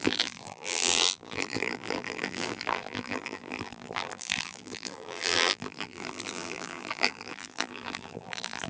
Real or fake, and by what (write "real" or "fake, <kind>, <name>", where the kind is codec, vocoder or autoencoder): fake, vocoder, BigVGAN v2